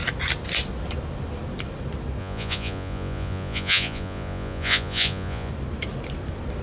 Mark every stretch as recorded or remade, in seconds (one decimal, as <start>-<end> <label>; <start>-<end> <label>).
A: 0.0-2.2 recorded; 2.2-5.5 remade; 5.5-6.6 recorded